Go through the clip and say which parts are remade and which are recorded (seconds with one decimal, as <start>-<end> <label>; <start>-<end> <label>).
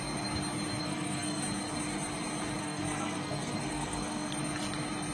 0.0-0.8 recorded; 0.8-1.4 remade; 1.4-2.6 recorded; 2.6-4.3 remade; 4.3-5.1 recorded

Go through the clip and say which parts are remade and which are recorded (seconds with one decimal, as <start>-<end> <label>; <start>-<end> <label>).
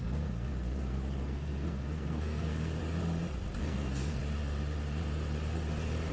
0.0-2.8 remade; 2.8-3.6 recorded; 3.6-4.2 remade; 4.2-6.1 recorded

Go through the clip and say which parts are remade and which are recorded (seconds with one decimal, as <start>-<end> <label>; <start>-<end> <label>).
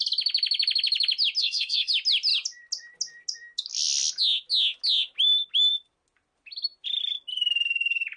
0.0-1.4 recorded; 1.4-1.9 remade; 1.9-8.2 recorded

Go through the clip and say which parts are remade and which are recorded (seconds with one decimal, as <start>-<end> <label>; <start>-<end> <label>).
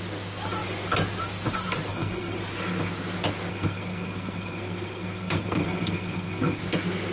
0.0-1.9 recorded; 1.9-2.4 remade; 2.4-3.5 recorded; 3.5-6.6 remade; 6.6-7.1 recorded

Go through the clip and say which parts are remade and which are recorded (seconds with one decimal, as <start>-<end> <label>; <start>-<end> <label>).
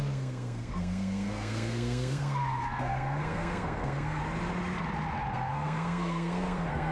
0.0-4.2 remade; 4.2-5.3 recorded; 5.3-6.9 remade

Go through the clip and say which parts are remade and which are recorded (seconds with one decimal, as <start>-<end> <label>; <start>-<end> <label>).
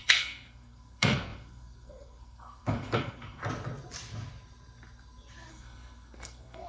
0.0-3.4 remade; 3.4-5.5 recorded; 5.5-6.7 remade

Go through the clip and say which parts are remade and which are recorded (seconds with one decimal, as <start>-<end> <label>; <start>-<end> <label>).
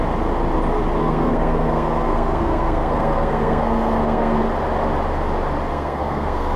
0.0-1.0 recorded; 1.0-4.4 remade; 4.4-5.7 recorded; 5.7-6.6 remade